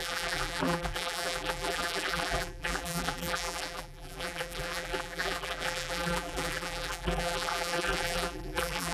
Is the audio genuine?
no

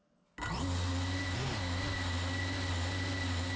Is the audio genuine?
yes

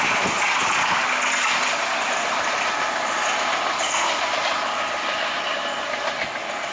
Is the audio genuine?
yes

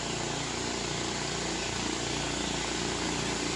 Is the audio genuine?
yes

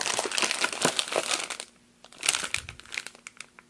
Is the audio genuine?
yes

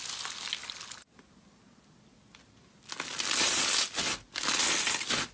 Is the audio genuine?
yes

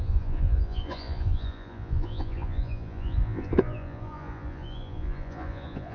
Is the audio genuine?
no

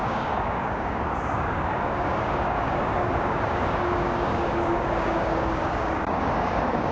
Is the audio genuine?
no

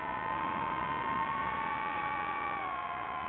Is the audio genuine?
no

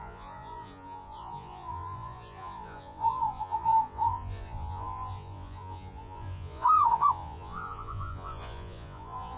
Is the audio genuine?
no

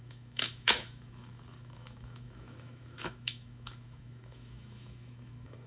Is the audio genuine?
no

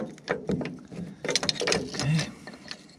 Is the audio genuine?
yes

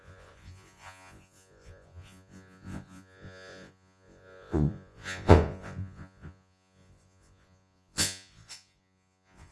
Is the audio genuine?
no